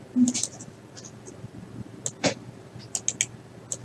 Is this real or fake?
real